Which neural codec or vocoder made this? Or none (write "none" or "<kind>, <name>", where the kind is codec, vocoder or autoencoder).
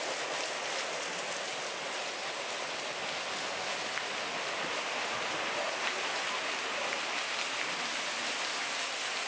none